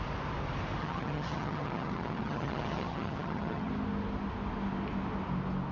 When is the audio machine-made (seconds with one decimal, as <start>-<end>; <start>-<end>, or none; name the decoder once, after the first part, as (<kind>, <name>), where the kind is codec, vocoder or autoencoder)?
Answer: 0.8-3.7 (vocoder, HiFi-GAN)